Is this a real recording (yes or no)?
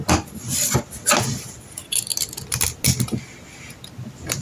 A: yes